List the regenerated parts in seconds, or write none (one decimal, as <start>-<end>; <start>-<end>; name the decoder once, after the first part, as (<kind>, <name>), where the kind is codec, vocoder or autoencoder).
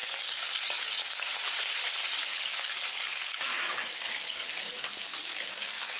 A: 0.0-1.4 (codec, DAC); 2.3-4.5; 5.1-6.0